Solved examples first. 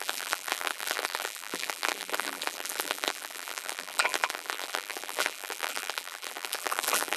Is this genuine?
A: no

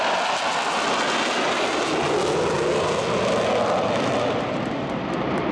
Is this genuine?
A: yes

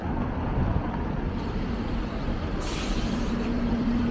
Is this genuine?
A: no